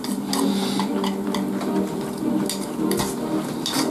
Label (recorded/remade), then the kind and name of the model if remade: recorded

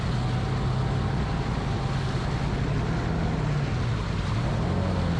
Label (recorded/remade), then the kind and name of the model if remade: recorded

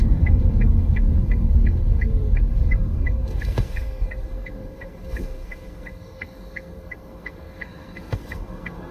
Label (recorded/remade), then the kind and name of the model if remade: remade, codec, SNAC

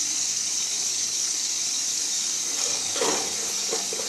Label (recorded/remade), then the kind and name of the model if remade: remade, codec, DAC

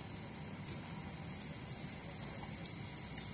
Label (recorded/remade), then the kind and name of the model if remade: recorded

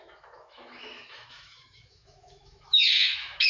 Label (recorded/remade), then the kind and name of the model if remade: remade, autoencoder, DAC-VAE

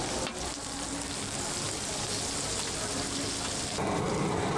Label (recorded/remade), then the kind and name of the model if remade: recorded